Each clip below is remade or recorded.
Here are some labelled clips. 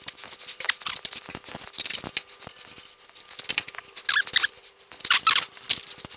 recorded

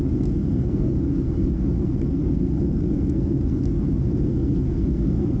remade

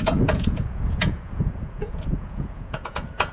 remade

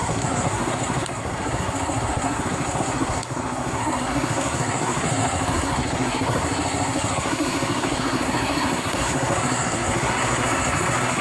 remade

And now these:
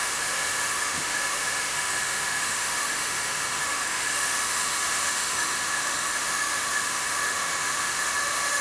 remade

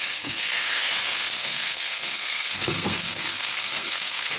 remade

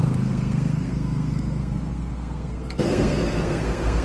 remade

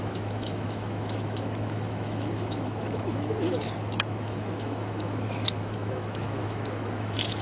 remade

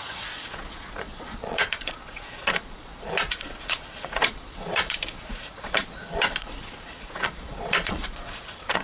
remade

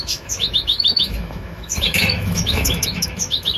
remade